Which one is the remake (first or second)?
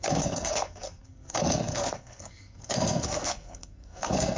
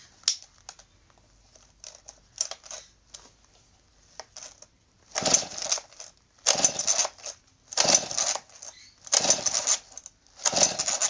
first